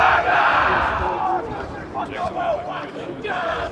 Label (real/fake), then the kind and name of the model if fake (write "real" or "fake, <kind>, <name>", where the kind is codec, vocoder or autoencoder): fake, vocoder, BigVGAN v2